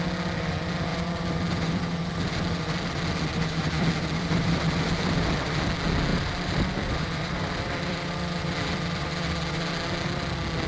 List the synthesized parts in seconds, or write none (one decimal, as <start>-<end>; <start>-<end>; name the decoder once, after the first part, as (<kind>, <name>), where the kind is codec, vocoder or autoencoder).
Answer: 0.9-5.6 (vocoder, BigVGAN v2); 6.1-9.7